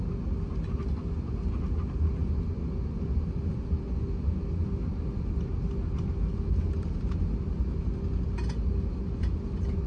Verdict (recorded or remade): recorded